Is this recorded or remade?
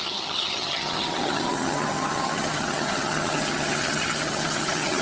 remade